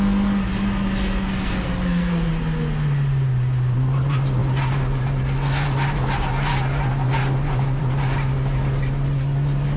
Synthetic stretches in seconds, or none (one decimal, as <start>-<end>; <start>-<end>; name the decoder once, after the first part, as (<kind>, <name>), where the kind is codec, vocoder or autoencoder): 1.3-2.3 (codec, SNAC)